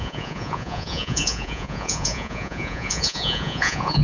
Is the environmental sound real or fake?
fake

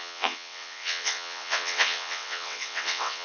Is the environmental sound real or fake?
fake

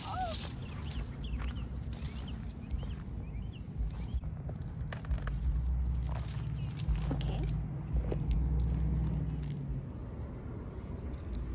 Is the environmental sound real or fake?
real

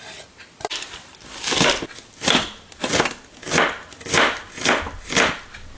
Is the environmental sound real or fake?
real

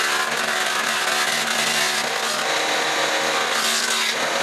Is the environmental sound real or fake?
real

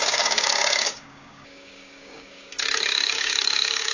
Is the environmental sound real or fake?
fake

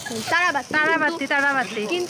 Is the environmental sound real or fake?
real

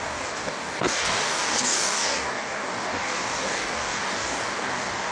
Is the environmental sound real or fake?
fake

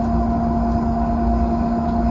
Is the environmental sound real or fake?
real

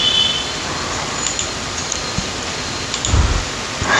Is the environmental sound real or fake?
real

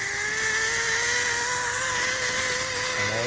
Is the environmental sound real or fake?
real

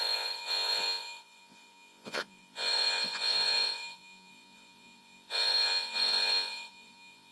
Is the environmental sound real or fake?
fake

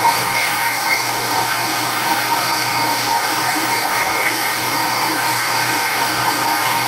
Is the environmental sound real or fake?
fake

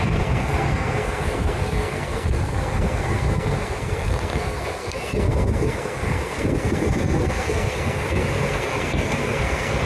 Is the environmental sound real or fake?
fake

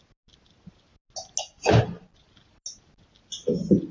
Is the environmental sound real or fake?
real